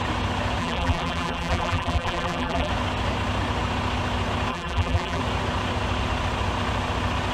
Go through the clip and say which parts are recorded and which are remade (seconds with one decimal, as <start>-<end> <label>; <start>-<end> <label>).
0.0-0.6 recorded; 0.6-2.7 remade; 2.7-4.5 recorded; 4.5-5.2 remade; 5.2-7.3 recorded